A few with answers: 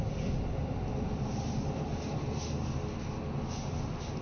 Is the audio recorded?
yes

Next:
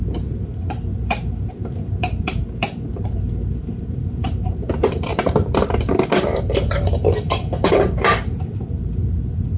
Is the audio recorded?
no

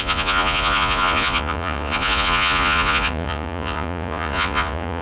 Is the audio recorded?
no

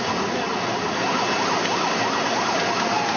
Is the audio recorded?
yes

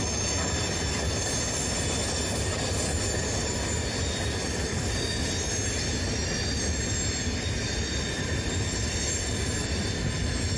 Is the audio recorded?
yes